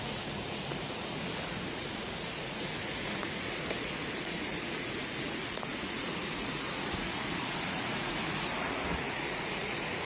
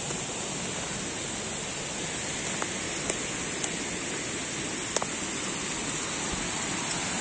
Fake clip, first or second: first